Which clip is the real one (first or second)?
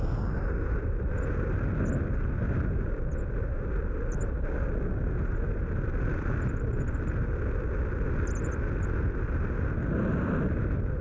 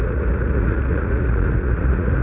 first